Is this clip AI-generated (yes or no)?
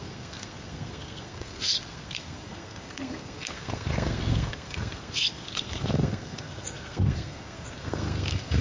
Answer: yes